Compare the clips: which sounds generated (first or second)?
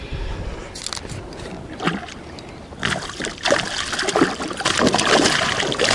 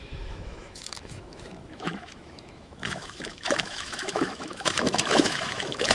second